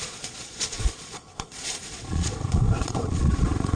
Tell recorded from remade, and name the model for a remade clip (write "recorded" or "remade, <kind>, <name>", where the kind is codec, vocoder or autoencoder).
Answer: remade, vocoder, Vocos